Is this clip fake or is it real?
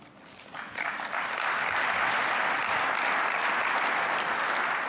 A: real